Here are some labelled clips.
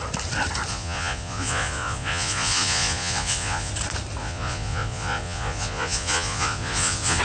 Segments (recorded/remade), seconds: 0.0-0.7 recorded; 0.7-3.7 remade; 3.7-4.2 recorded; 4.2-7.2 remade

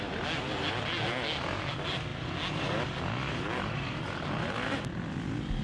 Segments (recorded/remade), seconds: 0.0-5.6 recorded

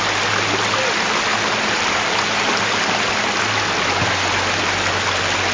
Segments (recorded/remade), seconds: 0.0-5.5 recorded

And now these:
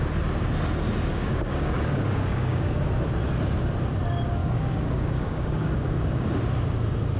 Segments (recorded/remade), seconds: 0.0-1.1 recorded; 1.1-2.8 remade; 2.8-4.4 recorded; 4.4-6.4 remade; 6.4-7.2 recorded